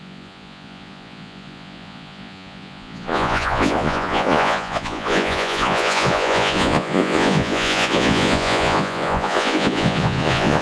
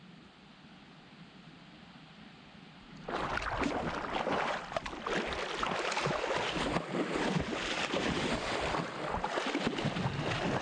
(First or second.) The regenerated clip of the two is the first